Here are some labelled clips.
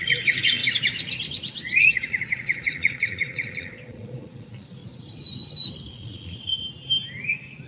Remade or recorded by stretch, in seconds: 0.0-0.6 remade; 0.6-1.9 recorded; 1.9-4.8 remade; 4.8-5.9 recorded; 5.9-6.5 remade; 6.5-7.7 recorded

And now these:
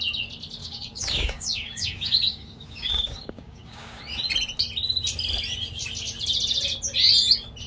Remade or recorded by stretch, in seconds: 0.0-0.6 recorded; 0.6-4.0 remade; 4.0-7.7 recorded

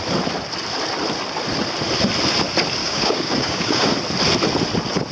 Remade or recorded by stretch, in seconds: 0.0-2.8 recorded; 2.8-3.9 remade; 3.9-5.1 recorded

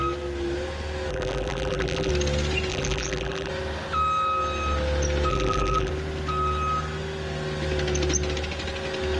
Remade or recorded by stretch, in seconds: 0.0-1.1 recorded; 1.1-2.1 remade; 2.1-2.7 recorded; 2.7-3.5 remade; 3.5-5.3 recorded; 5.3-5.9 remade; 5.9-9.2 recorded

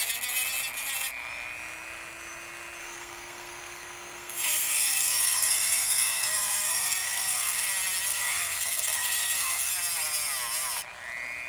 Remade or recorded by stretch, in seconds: 0.0-2.8 recorded; 2.8-7.7 remade; 7.7-8.1 recorded; 8.1-9.7 remade; 9.7-11.5 recorded

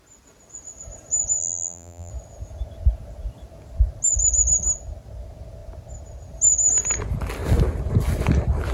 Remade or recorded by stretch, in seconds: 0.0-1.4 recorded; 1.4-2.1 remade; 2.1-8.7 recorded